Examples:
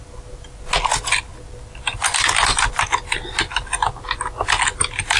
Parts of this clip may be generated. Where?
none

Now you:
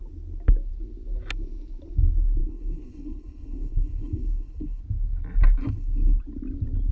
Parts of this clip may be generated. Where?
2.4-4.8 (codec, HILCodec); 5.6-6.2

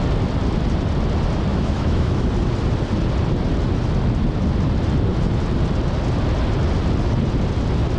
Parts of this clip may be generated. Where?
1.5-2.3 (autoencoder, DAC-VAE)

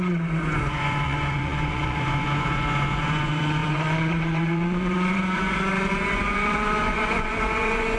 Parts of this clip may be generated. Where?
0.0-8.0 (vocoder, Vocos)

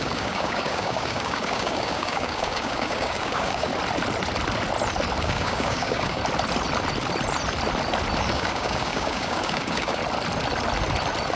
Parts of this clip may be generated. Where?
0.0-3.7 (codec, DAC); 5.2-6.2; 8.3-10.0

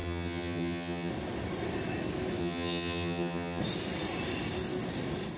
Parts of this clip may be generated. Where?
0.0-1.1 (vocoder, HiFi-GAN); 2.4-3.6